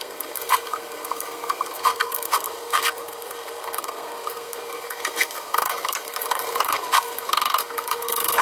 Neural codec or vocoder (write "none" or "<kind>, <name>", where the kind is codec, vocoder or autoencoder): codec, SNAC